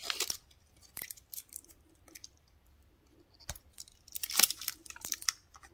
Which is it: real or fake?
fake